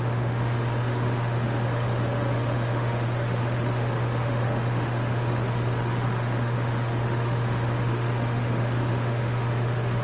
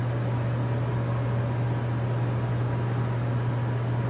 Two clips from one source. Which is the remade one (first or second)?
first